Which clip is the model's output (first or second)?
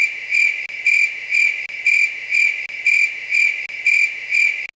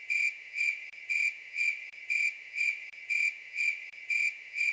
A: second